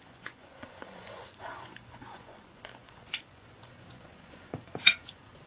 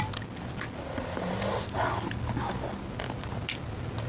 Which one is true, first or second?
second